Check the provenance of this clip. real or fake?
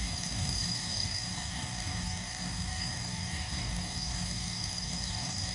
fake